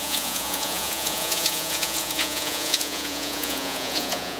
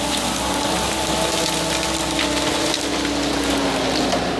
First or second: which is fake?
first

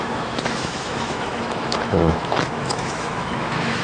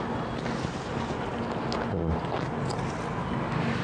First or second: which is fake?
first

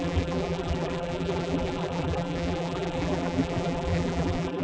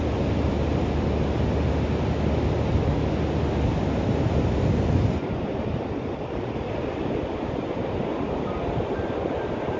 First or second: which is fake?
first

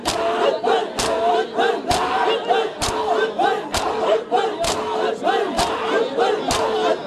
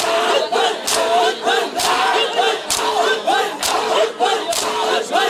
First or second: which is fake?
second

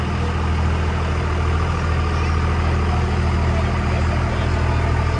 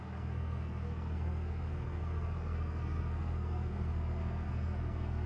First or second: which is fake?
second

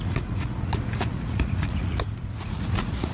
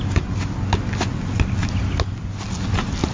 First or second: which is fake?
first